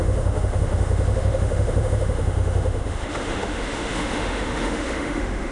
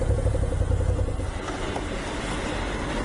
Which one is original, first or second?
second